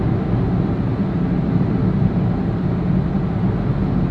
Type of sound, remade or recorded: recorded